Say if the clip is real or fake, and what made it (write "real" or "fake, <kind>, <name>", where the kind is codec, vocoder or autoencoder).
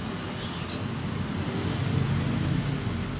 real